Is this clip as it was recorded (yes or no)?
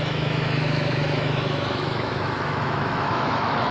no